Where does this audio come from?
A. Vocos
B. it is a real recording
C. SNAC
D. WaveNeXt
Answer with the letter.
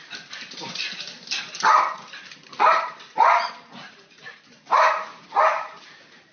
B